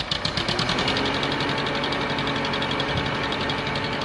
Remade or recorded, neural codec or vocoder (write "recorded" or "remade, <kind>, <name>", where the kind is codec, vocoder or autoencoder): recorded